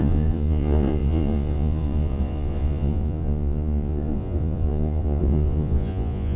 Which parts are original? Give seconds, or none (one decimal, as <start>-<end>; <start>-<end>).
none